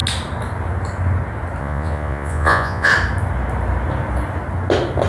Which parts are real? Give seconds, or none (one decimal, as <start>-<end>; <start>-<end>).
0.0-1.6; 2.9-5.1

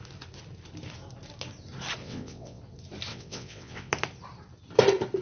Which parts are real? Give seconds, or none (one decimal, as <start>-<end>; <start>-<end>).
0.0-2.0; 2.6-3.1; 3.9-5.2

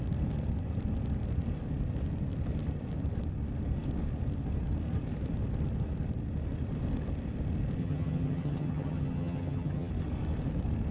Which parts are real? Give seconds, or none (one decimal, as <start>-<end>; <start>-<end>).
0.0-7.8; 9.9-10.9

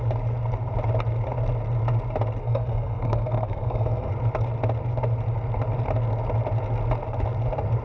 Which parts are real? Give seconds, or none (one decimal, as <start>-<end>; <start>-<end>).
0.0-2.4; 4.1-7.8

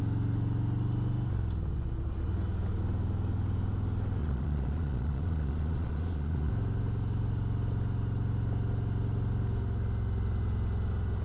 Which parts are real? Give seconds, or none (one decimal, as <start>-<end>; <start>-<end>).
0.0-4.2; 6.5-11.2

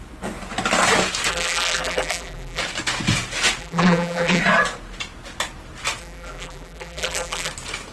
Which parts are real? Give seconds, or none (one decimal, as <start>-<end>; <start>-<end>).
0.0-1.3; 2.6-3.6; 4.4-6.0; 7.5-7.9

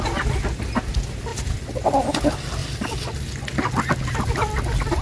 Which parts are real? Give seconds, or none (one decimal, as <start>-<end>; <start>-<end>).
0.0-5.0